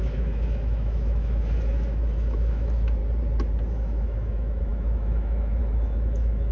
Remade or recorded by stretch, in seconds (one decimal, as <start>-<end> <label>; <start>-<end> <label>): 0.0-3.0 remade; 3.0-3.7 recorded; 3.7-6.5 remade